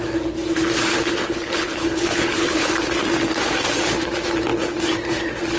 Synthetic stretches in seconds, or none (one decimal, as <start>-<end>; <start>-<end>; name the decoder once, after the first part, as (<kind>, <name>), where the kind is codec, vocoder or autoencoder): 0.9-2.7 (codec, HILCodec)